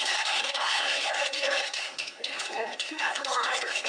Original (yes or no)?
no